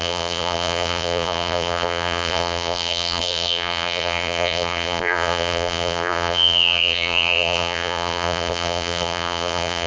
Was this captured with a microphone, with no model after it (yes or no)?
no